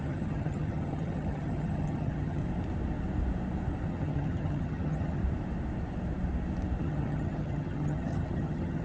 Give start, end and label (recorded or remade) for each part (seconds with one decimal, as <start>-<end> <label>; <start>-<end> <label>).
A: 0.0-2.4 remade; 2.4-3.9 recorded; 3.9-5.2 remade; 5.2-6.8 recorded; 6.8-8.8 remade